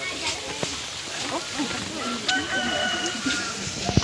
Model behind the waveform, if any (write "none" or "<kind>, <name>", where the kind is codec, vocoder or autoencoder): none